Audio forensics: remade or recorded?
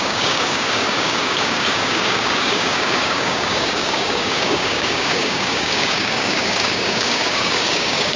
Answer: remade